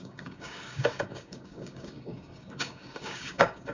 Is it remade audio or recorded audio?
remade